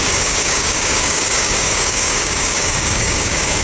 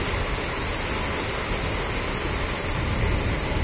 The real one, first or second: second